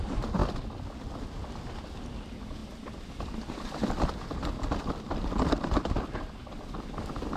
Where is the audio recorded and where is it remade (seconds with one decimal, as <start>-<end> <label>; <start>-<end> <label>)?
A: 0.0-2.6 recorded; 2.6-6.8 remade; 6.8-7.4 recorded